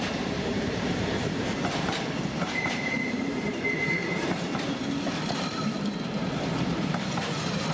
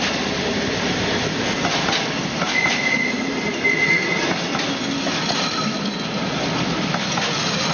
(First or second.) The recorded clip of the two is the second